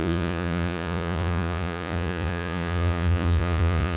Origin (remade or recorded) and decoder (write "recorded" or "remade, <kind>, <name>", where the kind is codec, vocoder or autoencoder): remade, vocoder, Vocos